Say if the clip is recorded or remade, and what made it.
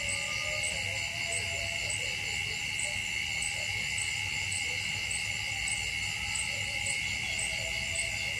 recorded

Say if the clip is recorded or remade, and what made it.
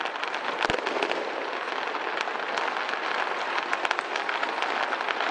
recorded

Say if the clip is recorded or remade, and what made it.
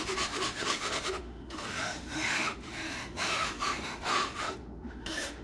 remade, autoencoder, DAC-VAE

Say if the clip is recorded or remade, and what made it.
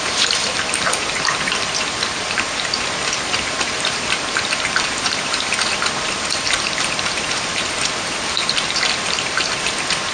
remade, vocoder, BigVGAN v2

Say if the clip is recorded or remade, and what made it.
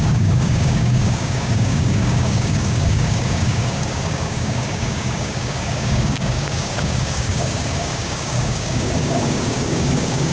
remade, codec, DAC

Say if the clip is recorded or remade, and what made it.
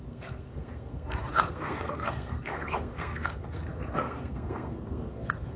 remade, codec, SNAC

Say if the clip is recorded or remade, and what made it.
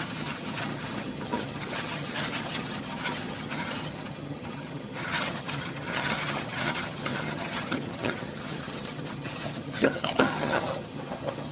remade, vocoder, HiFi-GAN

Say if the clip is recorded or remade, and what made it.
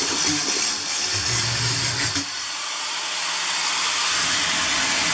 recorded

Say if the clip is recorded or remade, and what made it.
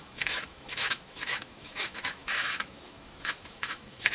remade, autoencoder, DAC-VAE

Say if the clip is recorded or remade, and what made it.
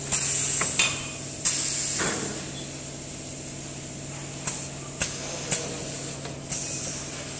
recorded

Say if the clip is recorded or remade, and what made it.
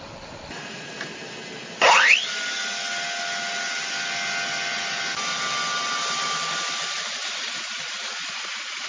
recorded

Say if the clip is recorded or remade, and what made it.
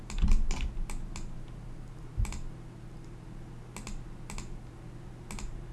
recorded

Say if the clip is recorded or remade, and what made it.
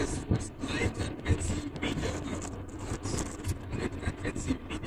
recorded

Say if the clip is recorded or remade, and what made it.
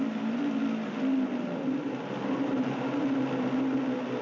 recorded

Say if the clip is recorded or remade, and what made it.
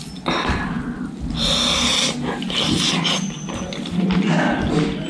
recorded